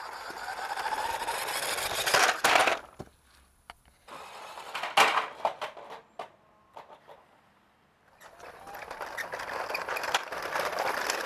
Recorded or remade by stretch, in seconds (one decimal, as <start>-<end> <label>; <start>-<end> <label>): 0.0-11.3 recorded